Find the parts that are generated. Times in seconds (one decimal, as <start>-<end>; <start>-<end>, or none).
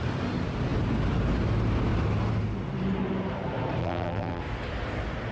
3.8-4.4